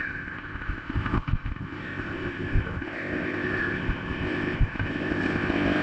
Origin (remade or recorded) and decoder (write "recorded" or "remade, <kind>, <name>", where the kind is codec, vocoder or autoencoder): remade, codec, ZipCodec